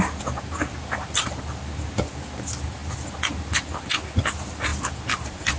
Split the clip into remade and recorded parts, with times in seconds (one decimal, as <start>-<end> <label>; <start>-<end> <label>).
0.0-5.6 recorded